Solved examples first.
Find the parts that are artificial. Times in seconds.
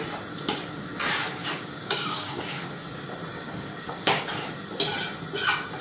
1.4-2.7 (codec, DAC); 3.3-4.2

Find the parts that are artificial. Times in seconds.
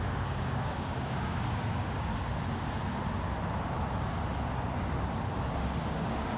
0.0-2.1 (codec, DAC); 5.9-6.4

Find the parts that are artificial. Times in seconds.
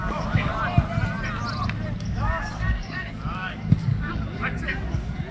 0.0-0.5 (codec, DAC); 2.0-5.3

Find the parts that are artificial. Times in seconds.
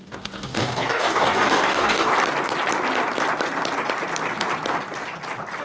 0.0-2.1 (codec, DAC)